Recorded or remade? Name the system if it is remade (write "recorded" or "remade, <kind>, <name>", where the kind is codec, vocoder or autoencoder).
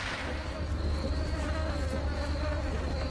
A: recorded